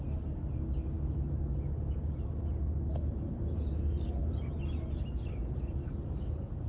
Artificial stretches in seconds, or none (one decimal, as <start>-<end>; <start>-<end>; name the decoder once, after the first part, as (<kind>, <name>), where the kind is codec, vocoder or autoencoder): none